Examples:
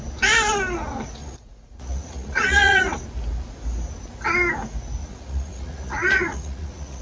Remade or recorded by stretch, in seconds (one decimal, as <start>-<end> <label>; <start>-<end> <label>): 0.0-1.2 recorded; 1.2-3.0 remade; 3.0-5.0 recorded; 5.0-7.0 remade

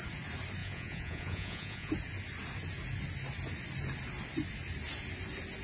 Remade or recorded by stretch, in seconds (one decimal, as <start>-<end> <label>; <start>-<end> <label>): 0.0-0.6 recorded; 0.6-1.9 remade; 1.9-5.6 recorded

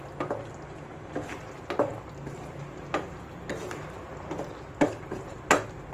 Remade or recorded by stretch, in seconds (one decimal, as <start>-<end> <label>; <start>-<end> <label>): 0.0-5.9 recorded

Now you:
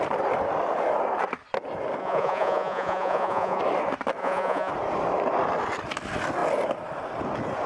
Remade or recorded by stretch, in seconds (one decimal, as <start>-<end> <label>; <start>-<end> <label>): 0.0-2.0 recorded; 2.0-3.6 remade; 3.6-4.2 recorded; 4.2-4.7 remade; 4.7-7.7 recorded

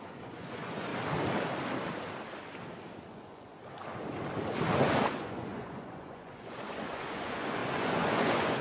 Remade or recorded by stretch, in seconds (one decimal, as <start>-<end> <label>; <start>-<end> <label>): 0.0-0.9 remade; 0.9-3.1 recorded; 3.1-3.6 remade; 3.6-5.1 recorded; 5.1-8.6 remade

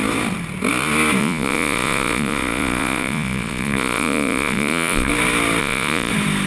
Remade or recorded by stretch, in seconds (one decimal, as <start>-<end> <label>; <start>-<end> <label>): 0.0-1.2 recorded; 1.2-5.1 remade; 5.1-5.6 recorded; 5.6-6.1 remade; 6.1-6.5 recorded

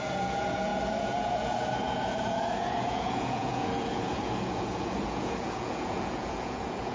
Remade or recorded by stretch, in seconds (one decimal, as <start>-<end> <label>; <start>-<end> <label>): 0.0-6.9 remade

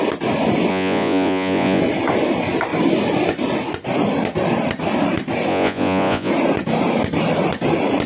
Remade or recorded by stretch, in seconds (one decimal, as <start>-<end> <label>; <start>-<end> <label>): 0.0-0.7 recorded; 0.7-1.8 remade; 1.8-5.5 recorded; 5.5-6.3 remade; 6.3-8.1 recorded